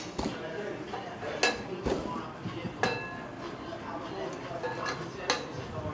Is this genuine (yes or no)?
yes